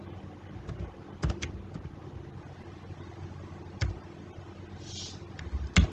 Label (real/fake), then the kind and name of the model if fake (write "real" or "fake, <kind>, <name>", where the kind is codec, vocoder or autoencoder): real